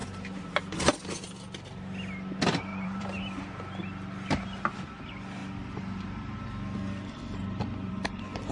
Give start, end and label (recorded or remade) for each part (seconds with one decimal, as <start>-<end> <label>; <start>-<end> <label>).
0.0-2.7 recorded; 2.7-3.6 remade; 3.6-8.5 recorded